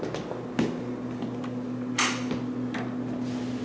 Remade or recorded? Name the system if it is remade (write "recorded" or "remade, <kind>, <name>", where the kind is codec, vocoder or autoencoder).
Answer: recorded